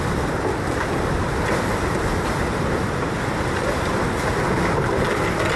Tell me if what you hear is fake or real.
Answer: real